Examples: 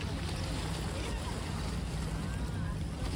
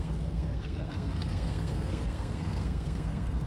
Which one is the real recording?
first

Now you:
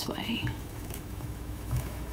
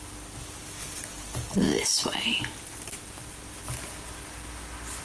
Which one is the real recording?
second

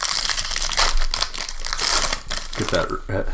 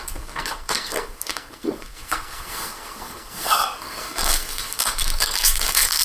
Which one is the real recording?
first